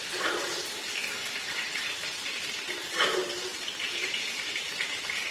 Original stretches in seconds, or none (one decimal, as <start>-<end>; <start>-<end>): none